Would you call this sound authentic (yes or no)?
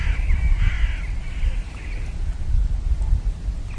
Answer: yes